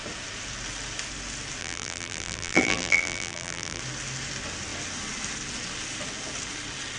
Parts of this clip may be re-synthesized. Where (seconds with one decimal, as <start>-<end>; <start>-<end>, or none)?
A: 1.6-3.8